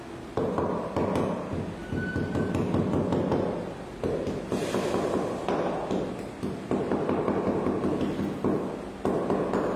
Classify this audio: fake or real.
real